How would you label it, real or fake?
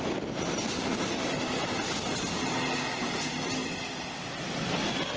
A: real